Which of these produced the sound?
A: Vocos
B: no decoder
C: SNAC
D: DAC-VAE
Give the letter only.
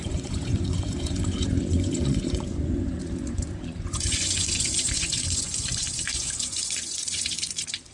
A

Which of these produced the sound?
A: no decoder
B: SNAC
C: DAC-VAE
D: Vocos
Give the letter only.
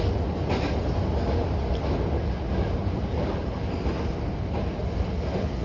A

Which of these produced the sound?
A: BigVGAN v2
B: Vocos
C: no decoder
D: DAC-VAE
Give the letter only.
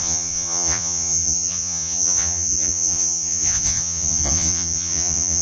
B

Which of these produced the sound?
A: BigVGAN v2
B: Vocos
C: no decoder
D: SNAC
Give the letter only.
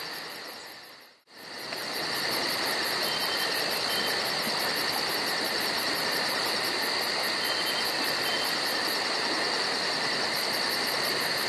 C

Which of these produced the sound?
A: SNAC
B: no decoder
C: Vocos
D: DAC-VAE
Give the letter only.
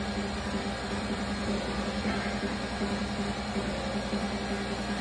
B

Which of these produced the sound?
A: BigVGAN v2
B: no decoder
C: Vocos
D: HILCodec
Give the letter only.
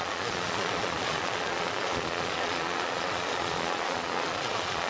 C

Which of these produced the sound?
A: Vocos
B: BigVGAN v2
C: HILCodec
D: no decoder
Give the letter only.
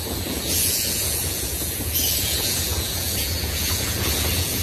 A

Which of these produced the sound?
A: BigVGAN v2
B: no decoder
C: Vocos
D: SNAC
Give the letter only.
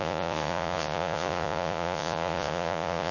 C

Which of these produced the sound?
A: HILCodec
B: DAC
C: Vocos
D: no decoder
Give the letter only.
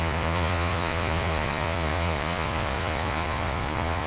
C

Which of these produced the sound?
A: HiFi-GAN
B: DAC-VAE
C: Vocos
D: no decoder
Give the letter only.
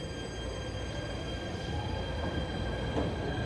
D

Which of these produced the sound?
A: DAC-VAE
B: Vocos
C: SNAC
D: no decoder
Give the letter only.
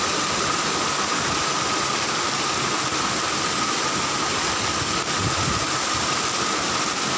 D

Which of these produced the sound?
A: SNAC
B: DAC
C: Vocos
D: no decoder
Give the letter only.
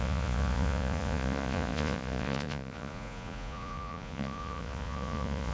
C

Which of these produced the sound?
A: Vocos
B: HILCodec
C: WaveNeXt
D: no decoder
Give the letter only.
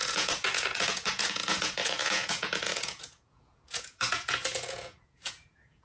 A